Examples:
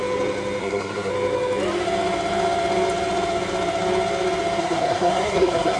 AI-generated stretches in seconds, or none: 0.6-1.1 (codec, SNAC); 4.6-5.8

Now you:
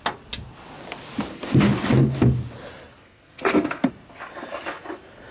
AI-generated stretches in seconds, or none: 3.0-3.9 (codec, SNAC)

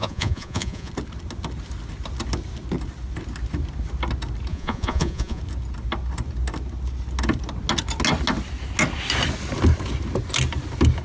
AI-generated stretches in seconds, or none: 0.0-0.9 (vocoder, Vocos); 4.5-5.4

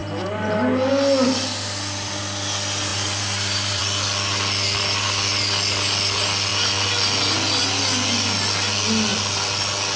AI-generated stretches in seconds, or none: 2.9-3.8 (vocoder, BigVGAN v2)

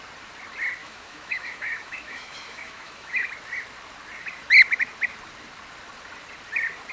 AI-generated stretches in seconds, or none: 0.8-3.3 (autoencoder, DAC-VAE)